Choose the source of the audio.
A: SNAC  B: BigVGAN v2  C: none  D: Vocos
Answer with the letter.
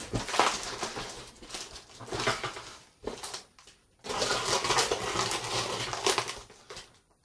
C